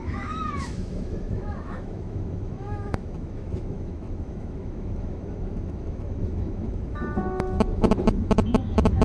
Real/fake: fake